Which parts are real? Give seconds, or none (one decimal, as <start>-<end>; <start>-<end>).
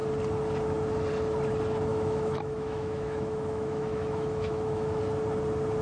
0.0-1.9; 5.0-5.8